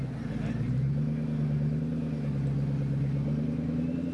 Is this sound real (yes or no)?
yes